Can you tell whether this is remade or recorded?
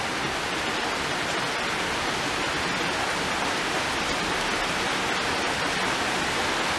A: recorded